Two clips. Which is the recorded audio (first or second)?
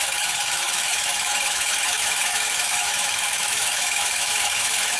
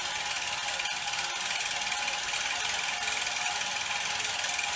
second